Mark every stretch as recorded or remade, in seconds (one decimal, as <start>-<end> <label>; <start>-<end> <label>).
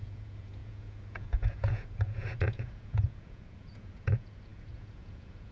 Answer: 0.0-5.5 remade